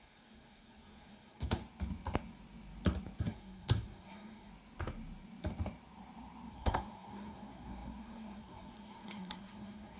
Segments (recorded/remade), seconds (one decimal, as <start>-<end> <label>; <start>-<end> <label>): 0.0-1.6 remade; 1.6-3.2 recorded; 3.2-4.5 remade; 4.5-6.5 recorded; 6.5-10.0 remade